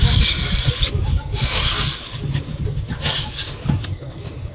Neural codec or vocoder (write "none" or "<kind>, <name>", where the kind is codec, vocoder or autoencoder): codec, DAC